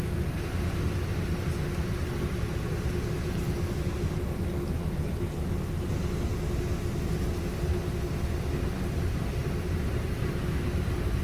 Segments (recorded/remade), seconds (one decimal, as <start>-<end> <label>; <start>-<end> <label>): 0.0-9.4 recorded; 9.4-10.5 remade; 10.5-11.2 recorded